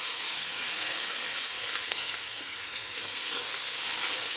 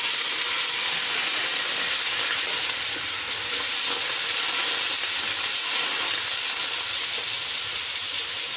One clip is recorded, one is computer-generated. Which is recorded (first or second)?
second